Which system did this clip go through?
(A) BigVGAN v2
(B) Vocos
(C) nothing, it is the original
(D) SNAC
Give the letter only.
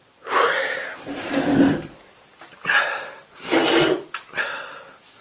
A